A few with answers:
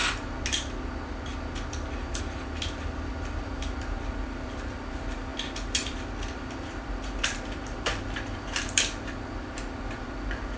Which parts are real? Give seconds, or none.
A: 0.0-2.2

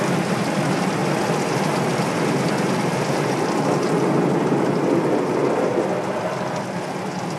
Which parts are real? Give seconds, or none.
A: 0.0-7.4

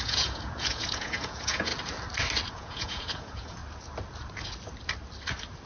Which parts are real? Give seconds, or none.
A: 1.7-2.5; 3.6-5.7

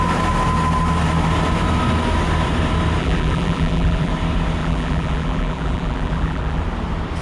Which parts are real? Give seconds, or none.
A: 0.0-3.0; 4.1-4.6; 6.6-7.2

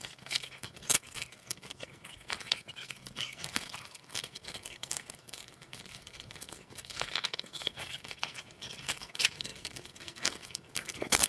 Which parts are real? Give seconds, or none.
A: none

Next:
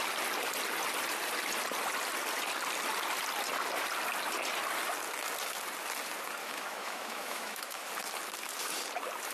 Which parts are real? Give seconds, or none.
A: 0.0-6.4; 7.9-9.3